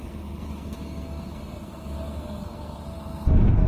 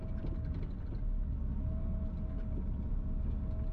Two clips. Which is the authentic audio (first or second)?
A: second